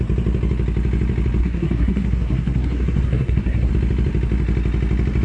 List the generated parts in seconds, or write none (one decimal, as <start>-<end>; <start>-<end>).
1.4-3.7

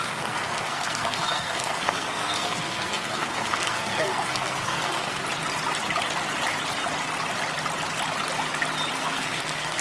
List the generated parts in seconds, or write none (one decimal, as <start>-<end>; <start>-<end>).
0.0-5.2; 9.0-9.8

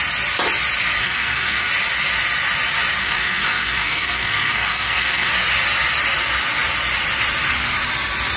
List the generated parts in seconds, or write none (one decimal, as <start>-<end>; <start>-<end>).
1.0-1.7; 3.0-5.3

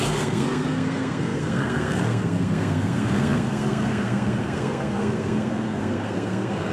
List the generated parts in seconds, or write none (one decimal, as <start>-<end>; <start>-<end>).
0.0-6.7

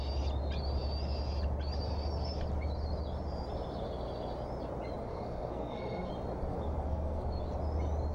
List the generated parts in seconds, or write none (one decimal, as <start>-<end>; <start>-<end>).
5.0-6.1; 6.5-7.3

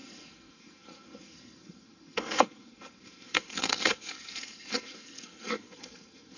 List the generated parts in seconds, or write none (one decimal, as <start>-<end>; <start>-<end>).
0.0-6.4